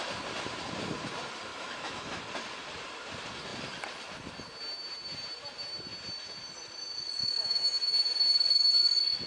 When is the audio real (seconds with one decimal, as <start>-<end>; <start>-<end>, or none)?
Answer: 0.0-1.5; 2.2-7.2; 7.9-9.3

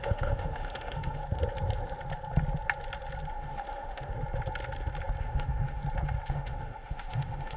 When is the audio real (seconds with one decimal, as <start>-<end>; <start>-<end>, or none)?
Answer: 1.2-3.3; 4.1-5.2; 5.8-6.3

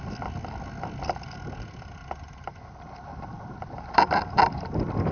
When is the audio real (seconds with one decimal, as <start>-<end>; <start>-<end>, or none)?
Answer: 0.0-1.9

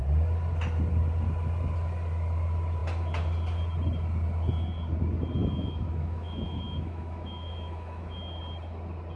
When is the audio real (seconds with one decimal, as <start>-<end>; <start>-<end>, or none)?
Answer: 0.0-5.4; 8.4-9.2